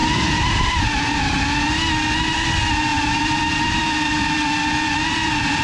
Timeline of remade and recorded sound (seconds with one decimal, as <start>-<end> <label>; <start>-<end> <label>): 0.0-1.4 remade; 1.4-2.9 recorded; 2.9-5.6 remade